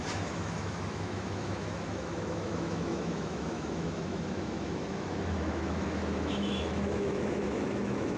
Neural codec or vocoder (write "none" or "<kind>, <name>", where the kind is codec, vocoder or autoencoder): autoencoder, DAC-VAE